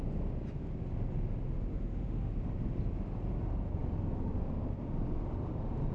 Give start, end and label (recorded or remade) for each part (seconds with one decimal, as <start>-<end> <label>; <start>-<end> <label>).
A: 0.0-1.7 recorded; 1.7-2.3 remade; 2.3-5.9 recorded